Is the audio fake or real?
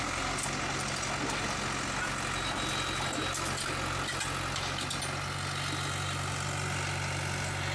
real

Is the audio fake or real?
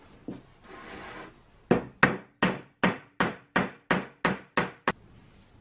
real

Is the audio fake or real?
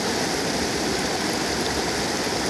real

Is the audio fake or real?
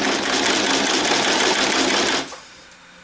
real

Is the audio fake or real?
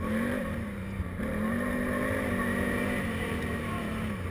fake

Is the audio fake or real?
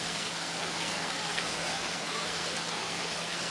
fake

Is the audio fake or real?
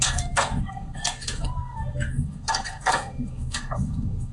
fake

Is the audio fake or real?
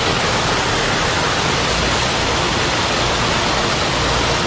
real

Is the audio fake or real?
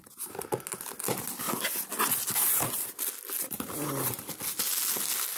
real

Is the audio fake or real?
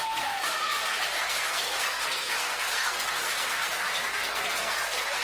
fake